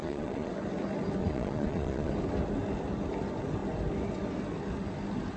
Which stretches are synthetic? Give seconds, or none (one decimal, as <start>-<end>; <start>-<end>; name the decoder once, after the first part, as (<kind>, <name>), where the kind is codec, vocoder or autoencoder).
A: 0.0-0.5 (vocoder, Vocos); 1.2-2.1